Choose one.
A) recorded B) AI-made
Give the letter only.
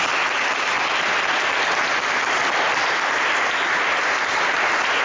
A